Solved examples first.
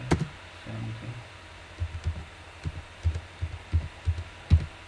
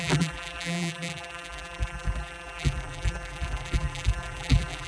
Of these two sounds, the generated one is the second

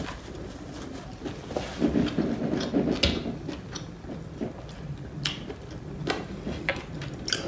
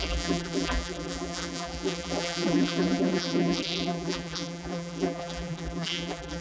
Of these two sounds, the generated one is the second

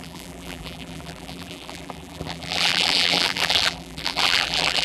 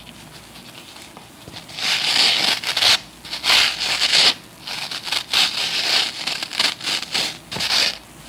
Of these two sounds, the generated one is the first